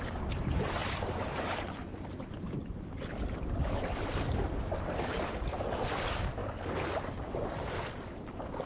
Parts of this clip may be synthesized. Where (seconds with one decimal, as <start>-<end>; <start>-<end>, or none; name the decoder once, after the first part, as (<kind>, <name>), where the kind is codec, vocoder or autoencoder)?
0.8-5.6 (vocoder, BigVGAN v2); 6.4-7.7